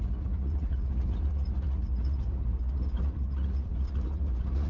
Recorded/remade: remade